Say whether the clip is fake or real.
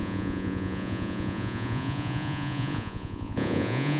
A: fake